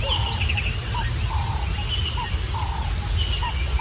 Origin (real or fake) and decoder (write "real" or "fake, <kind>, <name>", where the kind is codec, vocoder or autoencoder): real